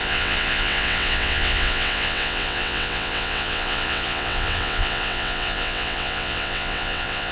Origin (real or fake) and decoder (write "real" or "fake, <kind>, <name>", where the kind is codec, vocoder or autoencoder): fake, vocoder, WaveNeXt